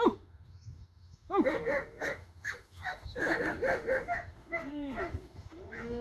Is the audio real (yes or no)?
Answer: no